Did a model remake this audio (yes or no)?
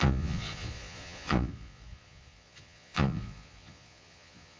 yes